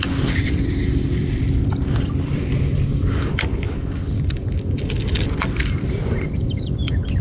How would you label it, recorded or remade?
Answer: remade